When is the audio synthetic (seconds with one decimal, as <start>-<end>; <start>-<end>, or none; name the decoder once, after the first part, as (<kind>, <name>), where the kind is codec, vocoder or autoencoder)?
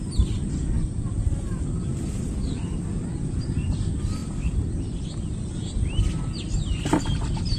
none